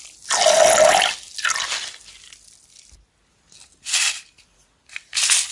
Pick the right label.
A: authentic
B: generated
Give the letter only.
A